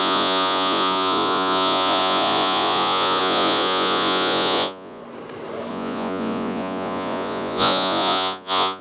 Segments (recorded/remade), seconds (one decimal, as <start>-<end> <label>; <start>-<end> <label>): 0.0-5.0 remade; 5.0-5.7 recorded; 5.7-8.8 remade